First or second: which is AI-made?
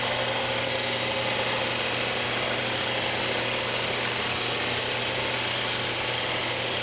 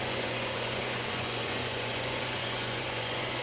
second